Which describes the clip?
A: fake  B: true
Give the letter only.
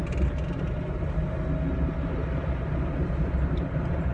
B